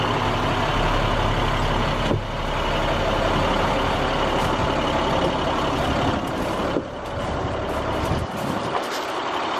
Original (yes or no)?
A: yes